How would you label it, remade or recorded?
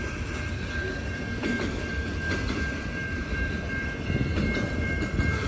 remade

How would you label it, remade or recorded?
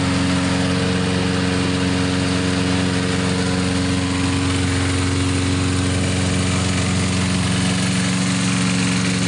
recorded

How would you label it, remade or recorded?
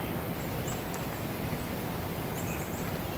recorded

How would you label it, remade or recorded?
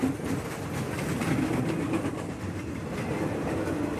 remade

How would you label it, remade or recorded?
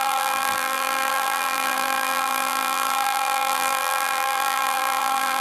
remade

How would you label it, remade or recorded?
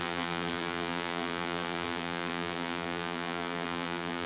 remade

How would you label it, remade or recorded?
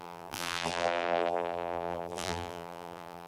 remade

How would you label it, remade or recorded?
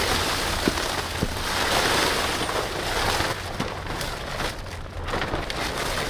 recorded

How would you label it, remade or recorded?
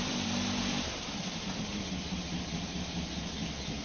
remade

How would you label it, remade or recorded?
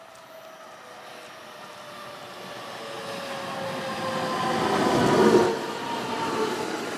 recorded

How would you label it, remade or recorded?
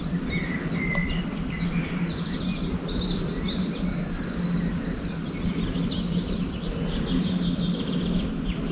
recorded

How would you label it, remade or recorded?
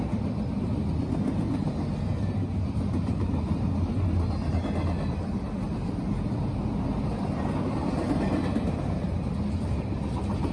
recorded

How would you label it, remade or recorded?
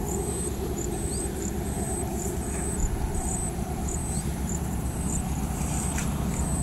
remade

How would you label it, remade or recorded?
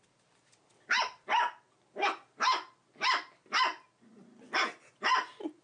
recorded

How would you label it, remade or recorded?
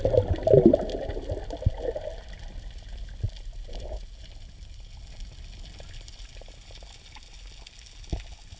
recorded